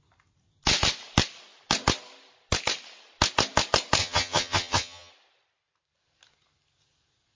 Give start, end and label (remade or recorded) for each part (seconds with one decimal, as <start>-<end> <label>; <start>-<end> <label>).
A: 0.0-4.0 recorded; 4.0-5.1 remade; 5.1-7.3 recorded